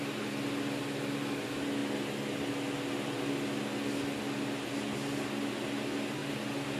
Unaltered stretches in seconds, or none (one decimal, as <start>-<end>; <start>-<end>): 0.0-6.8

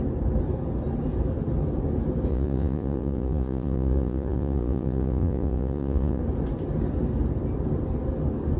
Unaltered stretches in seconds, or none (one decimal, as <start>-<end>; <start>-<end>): 0.0-2.3; 6.2-8.6

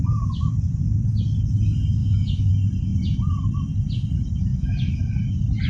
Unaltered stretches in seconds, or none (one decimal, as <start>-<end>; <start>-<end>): 0.0-2.0; 2.5-4.5; 5.1-5.7